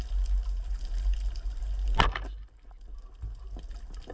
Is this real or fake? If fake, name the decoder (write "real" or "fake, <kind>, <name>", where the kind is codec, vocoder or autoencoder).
real